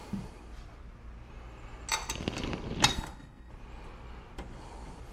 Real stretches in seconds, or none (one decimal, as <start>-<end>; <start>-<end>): 0.0-2.9; 3.5-5.1